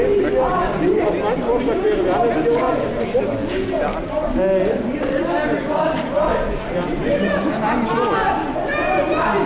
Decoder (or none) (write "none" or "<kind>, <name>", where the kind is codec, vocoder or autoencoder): none